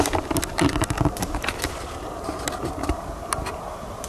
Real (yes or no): yes